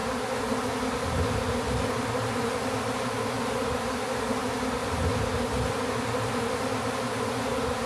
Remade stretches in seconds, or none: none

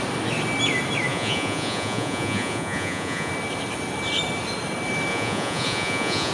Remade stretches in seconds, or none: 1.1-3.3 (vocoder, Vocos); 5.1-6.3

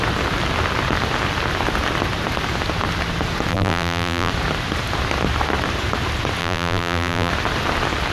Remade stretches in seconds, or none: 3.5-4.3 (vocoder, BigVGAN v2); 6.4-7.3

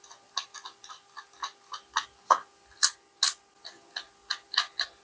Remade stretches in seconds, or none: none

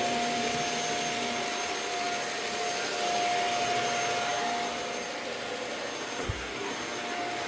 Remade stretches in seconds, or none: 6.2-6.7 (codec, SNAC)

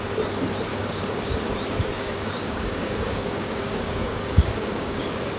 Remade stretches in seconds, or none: 0.7-1.4 (codec, DAC); 1.9-5.4

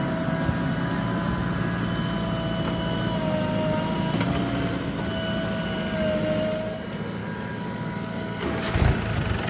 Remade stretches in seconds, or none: 7.2-8.8 (codec, DAC)

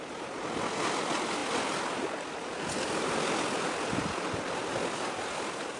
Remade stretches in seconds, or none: none